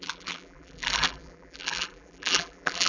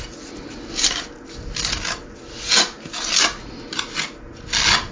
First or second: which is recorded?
second